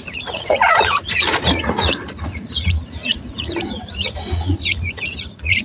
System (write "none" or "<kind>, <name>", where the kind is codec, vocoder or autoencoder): vocoder, Vocos